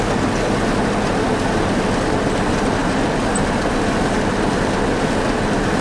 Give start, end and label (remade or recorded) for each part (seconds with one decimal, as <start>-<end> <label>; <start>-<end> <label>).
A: 0.0-5.8 recorded